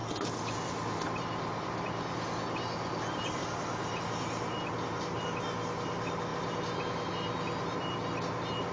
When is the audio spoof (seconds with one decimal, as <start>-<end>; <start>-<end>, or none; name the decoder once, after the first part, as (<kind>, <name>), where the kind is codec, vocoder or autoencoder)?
none